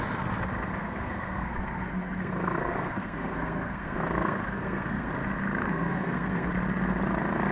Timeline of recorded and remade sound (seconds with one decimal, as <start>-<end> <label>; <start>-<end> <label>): 0.0-0.7 recorded; 0.7-5.1 remade; 5.1-5.6 recorded; 5.6-6.5 remade; 6.5-7.5 recorded